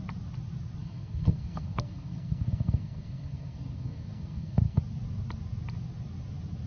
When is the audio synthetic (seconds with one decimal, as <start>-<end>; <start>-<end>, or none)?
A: 0.8-4.8